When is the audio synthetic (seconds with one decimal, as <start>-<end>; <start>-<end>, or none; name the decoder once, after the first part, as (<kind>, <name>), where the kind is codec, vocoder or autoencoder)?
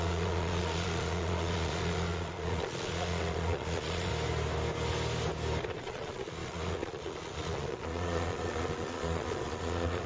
0.0-4.1 (vocoder, Vocos); 5.8-10.1